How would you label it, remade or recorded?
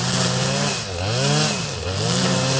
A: recorded